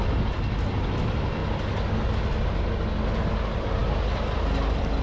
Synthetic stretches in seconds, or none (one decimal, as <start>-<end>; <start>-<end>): none